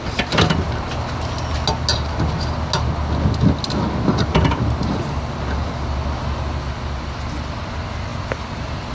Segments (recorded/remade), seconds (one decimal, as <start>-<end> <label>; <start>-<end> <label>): 0.0-8.9 recorded